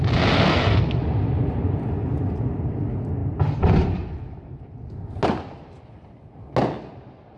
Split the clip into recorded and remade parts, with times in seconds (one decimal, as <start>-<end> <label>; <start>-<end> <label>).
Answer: 0.0-0.5 recorded; 0.5-1.0 remade; 1.0-7.4 recorded